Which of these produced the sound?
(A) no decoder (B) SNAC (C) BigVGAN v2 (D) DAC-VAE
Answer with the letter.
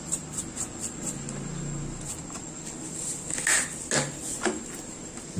A